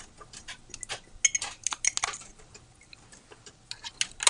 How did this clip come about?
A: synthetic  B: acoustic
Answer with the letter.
B